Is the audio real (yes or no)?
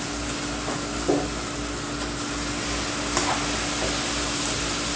yes